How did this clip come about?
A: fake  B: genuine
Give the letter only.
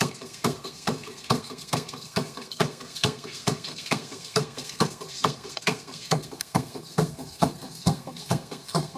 A